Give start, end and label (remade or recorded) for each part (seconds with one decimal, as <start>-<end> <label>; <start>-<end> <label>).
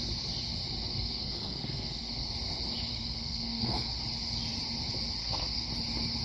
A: 0.0-0.9 recorded; 0.9-2.3 remade; 2.3-2.9 recorded; 2.9-3.9 remade; 3.9-5.2 recorded; 5.2-5.7 remade; 5.7-6.2 recorded